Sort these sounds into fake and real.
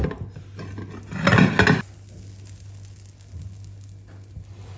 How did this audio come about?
real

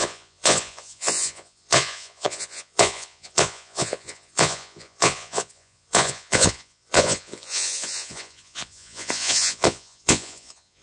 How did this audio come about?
fake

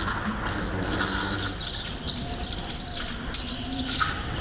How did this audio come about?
real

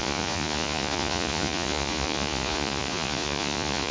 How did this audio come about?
fake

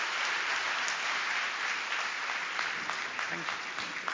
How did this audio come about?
real